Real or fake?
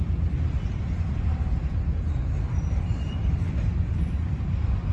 real